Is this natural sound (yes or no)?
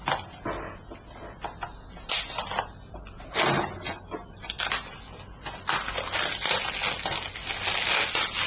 yes